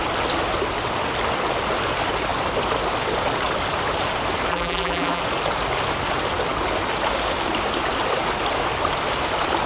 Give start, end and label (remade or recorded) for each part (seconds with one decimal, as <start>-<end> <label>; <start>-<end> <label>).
0.0-4.5 recorded; 4.5-5.2 remade; 5.2-9.7 recorded